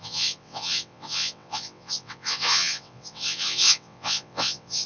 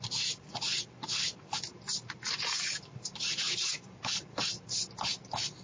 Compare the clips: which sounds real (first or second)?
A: second